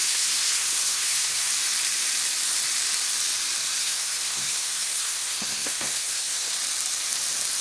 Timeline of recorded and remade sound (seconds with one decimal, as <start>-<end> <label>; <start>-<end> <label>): 0.0-1.5 remade; 1.5-3.8 recorded; 3.8-6.5 remade; 6.5-7.6 recorded